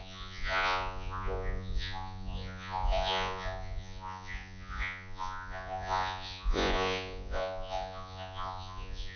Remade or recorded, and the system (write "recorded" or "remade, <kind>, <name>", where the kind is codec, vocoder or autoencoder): remade, vocoder, Vocos